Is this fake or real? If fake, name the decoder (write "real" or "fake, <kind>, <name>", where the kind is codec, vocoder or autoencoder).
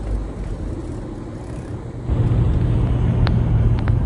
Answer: real